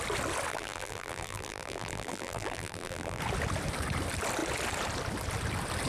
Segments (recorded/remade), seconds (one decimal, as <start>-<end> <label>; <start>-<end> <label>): 0.0-0.5 recorded; 0.5-3.2 remade; 3.2-5.9 recorded